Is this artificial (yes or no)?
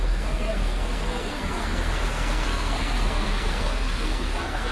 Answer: yes